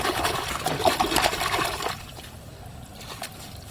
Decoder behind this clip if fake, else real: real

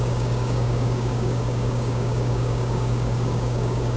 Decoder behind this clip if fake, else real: fake, codec, DAC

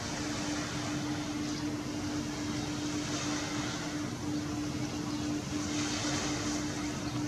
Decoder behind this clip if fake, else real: real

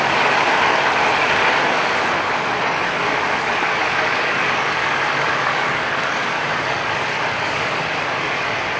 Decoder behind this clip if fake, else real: fake, codec, DAC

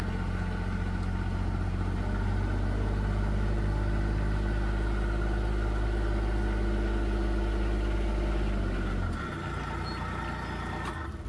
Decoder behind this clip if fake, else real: real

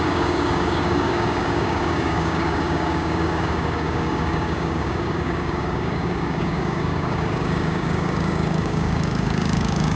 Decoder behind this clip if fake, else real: fake, codec, DAC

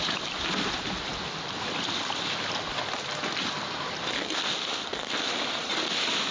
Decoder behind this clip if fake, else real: real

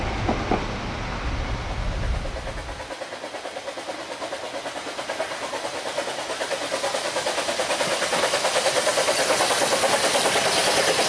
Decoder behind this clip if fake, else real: real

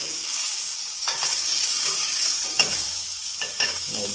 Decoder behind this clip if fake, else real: fake, codec, DAC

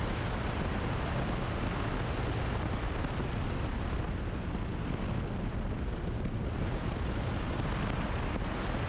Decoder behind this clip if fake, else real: real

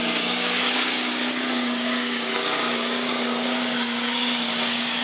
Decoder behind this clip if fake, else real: fake, codec, DAC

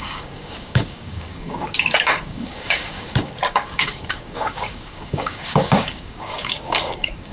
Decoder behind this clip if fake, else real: fake, codec, DAC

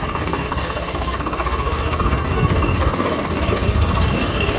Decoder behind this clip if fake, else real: fake, codec, DAC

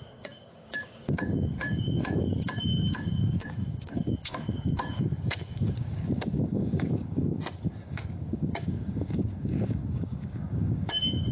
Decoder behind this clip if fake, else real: fake, codec, DAC